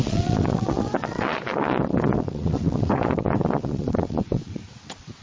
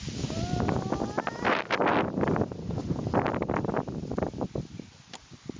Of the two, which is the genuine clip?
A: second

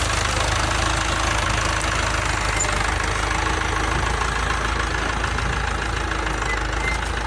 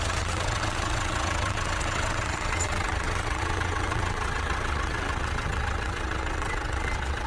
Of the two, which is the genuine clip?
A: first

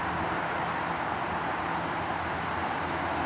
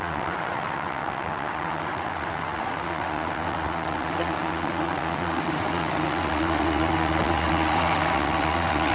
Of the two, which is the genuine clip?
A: first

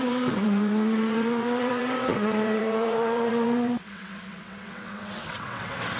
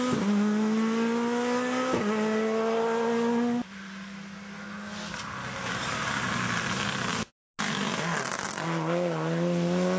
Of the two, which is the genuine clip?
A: second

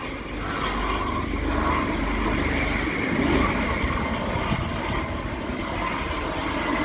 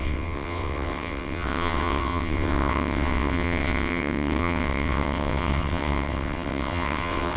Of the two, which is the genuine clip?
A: first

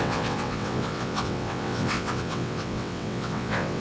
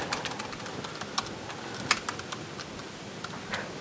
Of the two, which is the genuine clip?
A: second